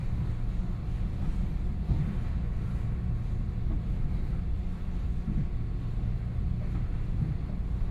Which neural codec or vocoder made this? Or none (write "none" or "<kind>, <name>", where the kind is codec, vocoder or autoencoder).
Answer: none